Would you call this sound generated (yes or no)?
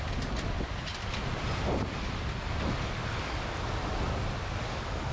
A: no